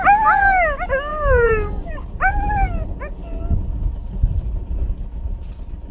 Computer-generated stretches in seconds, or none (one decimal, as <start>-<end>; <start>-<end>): 1.1-2.9